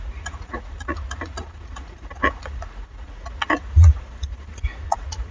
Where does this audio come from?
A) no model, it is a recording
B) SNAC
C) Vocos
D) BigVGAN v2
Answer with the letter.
C